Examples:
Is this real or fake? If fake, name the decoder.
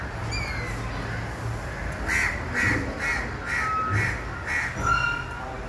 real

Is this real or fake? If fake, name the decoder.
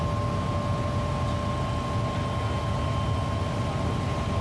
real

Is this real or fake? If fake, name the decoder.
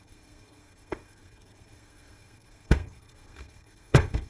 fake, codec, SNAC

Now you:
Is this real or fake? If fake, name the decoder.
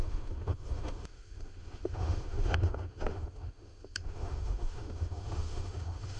fake, autoencoder, DAC-VAE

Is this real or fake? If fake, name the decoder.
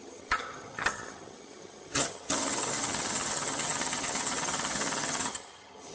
fake, vocoder, HiFi-GAN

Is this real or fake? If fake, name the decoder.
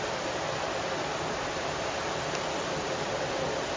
real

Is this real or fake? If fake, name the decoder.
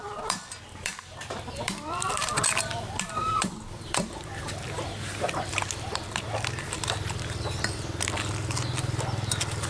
fake, vocoder, BigVGAN v2